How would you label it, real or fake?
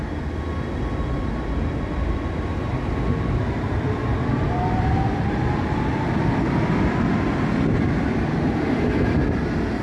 real